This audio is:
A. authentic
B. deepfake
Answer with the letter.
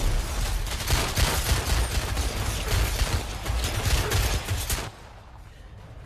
A